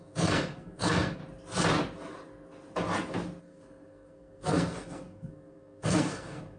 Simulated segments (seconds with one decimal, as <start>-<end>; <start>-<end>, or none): 0.0-1.2; 3.4-6.6

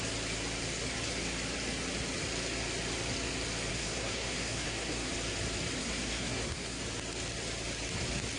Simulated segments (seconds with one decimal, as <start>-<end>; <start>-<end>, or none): 3.7-5.1; 5.8-6.8